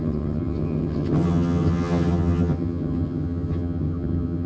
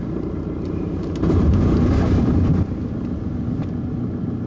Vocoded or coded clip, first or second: first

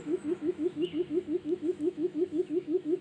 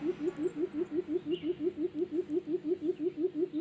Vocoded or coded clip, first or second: first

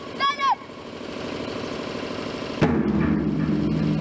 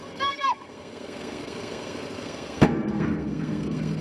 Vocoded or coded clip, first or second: second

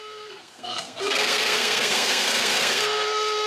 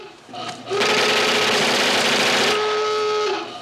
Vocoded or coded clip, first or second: first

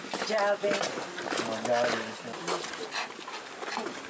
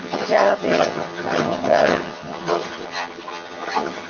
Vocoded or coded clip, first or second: second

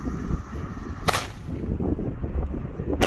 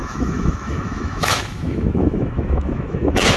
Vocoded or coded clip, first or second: second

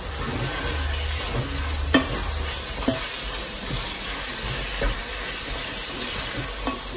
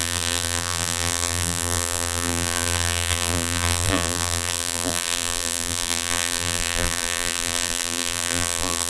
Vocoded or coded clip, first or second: second